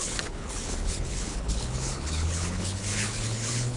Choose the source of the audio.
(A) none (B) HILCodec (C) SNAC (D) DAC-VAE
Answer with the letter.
B